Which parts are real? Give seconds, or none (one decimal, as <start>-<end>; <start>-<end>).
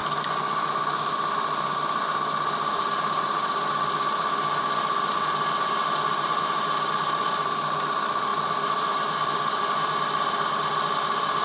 0.0-11.4